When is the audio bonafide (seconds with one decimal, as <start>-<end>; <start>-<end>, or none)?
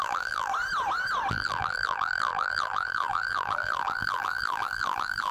0.5-1.3